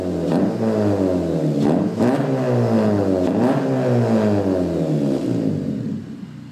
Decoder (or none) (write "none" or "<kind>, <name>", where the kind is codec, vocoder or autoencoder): none